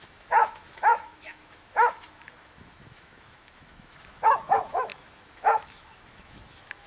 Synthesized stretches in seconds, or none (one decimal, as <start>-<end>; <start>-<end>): 0.0-6.9